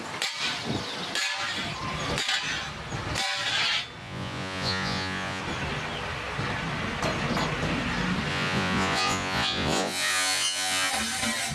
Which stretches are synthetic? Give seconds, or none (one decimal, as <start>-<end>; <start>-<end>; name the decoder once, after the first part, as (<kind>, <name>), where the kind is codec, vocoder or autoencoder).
4.0-5.4 (vocoder, Vocos); 8.3-10.9